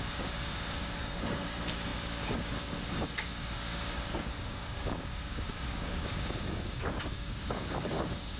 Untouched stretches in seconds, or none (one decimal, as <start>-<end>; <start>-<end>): none